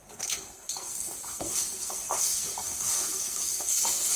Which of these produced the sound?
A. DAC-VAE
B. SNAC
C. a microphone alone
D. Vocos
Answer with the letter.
B